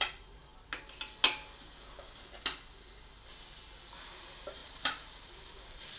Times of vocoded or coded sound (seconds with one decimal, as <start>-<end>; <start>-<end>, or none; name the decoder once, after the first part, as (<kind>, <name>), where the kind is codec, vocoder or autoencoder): 0.0-0.5 (vocoder, BigVGAN v2); 4.1-6.0